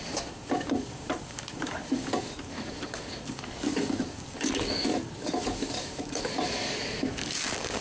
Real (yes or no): no